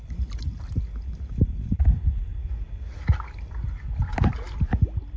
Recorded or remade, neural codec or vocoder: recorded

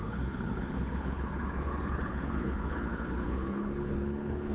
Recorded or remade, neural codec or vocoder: remade, codec, HILCodec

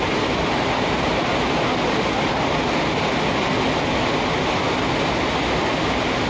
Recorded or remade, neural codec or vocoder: recorded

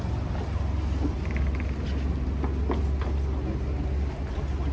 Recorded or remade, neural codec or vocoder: recorded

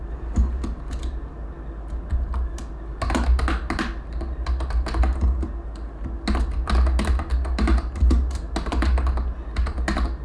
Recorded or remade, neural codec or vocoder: recorded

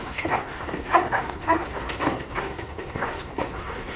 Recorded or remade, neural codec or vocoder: remade, codec, SNAC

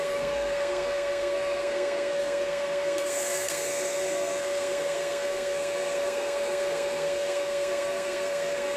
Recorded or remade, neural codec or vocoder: remade, codec, SNAC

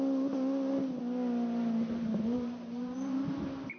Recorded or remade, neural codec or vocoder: recorded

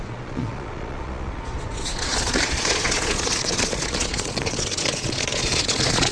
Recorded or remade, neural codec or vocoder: remade, vocoder, Vocos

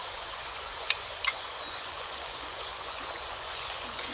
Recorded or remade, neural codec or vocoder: remade, vocoder, Vocos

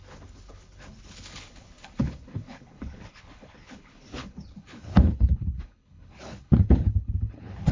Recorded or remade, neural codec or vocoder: remade, codec, HILCodec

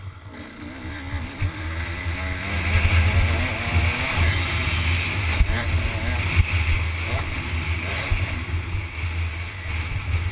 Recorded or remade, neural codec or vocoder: recorded